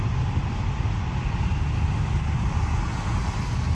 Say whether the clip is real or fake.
real